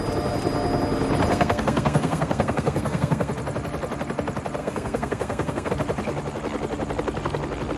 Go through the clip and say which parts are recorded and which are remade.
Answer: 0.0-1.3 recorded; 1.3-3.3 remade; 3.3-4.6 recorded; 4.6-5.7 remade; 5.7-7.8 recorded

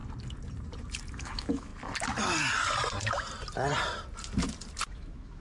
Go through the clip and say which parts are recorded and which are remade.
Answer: 0.0-1.1 recorded; 1.1-1.7 remade; 1.7-4.9 recorded; 4.9-5.4 remade

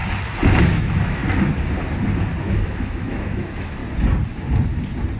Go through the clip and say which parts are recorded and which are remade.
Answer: 0.0-0.6 recorded; 0.6-1.2 remade; 1.2-2.4 recorded; 2.4-3.8 remade; 3.8-5.2 recorded

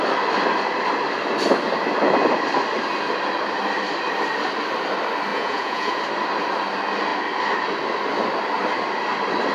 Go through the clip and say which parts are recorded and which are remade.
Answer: 0.0-5.3 recorded; 5.3-6.0 remade; 6.0-9.5 recorded

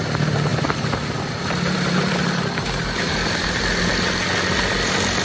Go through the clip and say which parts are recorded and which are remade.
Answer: 0.0-0.5 recorded; 0.5-3.6 remade; 3.6-5.2 recorded

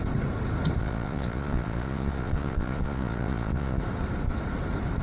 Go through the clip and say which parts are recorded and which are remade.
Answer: 0.0-0.8 recorded; 0.8-3.8 remade; 3.8-5.0 recorded